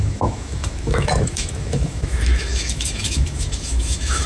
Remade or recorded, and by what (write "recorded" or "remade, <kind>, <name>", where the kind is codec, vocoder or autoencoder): remade, autoencoder, DAC-VAE